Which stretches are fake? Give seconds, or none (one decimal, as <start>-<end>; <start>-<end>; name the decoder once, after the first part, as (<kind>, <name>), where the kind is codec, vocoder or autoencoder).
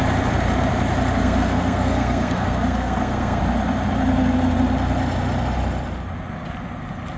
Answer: 1.2-3.4 (codec, SNAC)